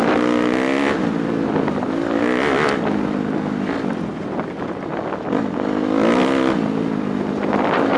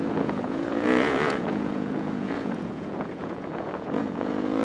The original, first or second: first